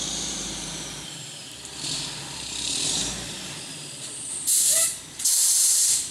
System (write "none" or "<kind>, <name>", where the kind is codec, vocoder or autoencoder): vocoder, BigVGAN v2